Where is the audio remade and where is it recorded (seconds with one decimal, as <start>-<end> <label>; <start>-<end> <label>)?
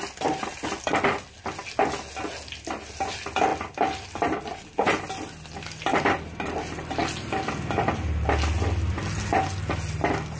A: 0.0-10.4 recorded